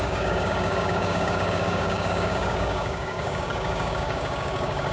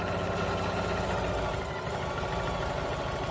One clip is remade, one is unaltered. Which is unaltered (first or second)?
second